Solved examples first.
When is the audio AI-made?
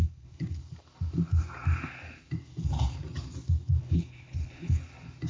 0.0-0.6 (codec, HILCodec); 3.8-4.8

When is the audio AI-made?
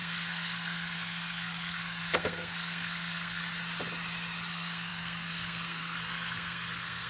0.0-3.4 (codec, SNAC); 4.5-7.1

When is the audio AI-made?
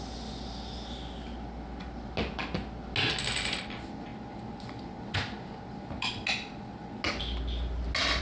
none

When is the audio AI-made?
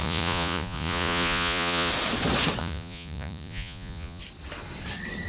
0.0-1.9 (vocoder, Vocos); 2.6-4.2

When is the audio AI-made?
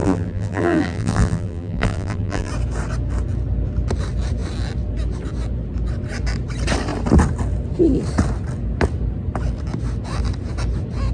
0.0-2.5 (vocoder, BigVGAN v2)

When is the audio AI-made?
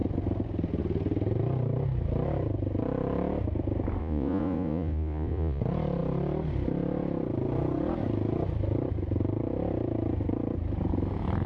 4.0-5.6 (vocoder, Vocos)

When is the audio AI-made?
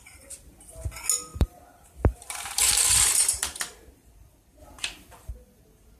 1.3-3.6 (vocoder, BigVGAN v2); 4.6-5.3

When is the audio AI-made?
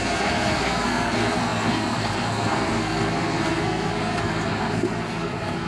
0.0-5.7 (codec, SNAC)